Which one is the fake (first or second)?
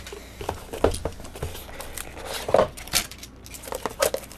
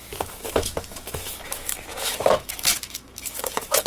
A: second